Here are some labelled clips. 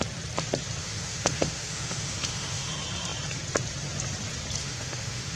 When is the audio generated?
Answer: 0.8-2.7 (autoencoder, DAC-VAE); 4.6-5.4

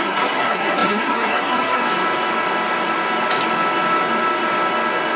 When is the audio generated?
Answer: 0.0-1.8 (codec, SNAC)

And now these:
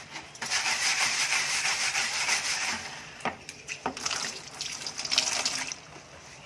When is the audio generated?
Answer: 0.9-4.5 (vocoder, BigVGAN v2)